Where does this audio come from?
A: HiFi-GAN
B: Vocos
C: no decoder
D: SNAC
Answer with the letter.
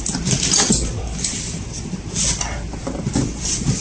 C